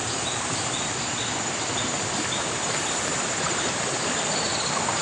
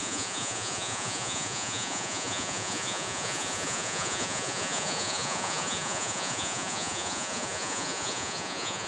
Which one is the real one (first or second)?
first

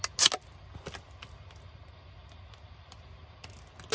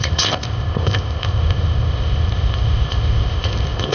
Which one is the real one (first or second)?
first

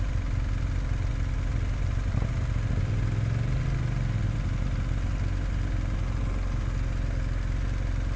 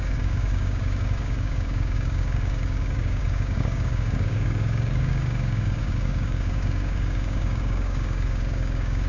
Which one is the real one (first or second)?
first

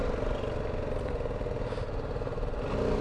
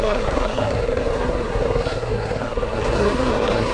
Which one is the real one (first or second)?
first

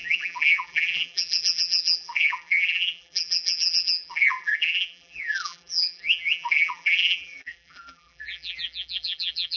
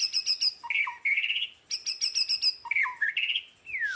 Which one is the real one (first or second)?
second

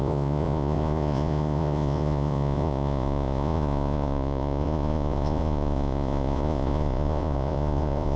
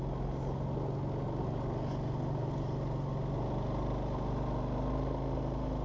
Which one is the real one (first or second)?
second